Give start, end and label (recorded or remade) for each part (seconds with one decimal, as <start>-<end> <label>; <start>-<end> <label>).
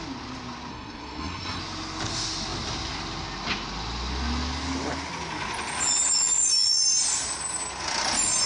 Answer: 0.0-0.7 recorded; 0.7-1.6 remade; 1.6-8.5 recorded